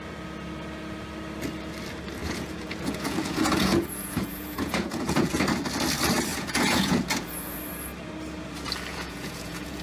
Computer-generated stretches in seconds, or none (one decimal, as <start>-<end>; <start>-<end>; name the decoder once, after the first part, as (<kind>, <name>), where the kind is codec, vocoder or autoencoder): 2.2-5.4 (vocoder, Vocos); 6.3-7.6; 8.9-9.8